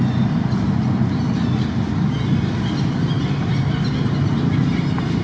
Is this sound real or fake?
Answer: real